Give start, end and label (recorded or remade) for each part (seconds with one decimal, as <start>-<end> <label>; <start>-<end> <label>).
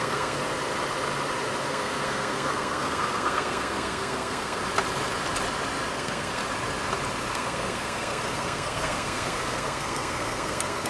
0.0-0.4 remade; 0.4-1.7 recorded; 1.7-4.6 remade; 4.6-5.9 recorded; 5.9-6.4 remade; 6.4-7.3 recorded; 7.3-10.9 remade